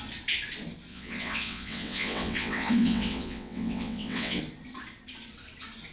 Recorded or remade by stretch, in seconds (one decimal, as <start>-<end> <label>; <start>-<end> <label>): 0.0-0.9 recorded; 0.9-4.4 remade; 4.4-5.9 recorded